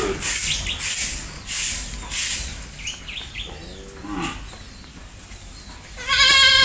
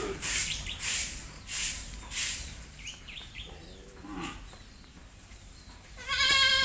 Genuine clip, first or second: first